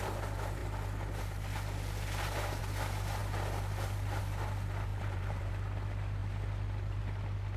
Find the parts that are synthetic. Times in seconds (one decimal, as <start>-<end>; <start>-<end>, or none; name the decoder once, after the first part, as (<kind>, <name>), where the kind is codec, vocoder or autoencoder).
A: 4.9-5.5 (vocoder, BigVGAN v2)